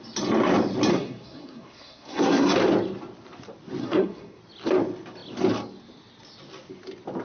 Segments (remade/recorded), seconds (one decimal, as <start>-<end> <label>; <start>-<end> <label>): 0.0-0.9 recorded; 0.9-2.5 remade; 2.5-3.8 recorded; 3.8-4.4 remade; 4.4-7.2 recorded